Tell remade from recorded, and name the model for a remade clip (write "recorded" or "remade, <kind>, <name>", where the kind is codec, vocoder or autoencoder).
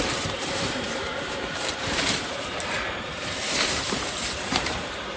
remade, vocoder, BigVGAN v2